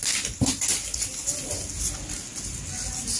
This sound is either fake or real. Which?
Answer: real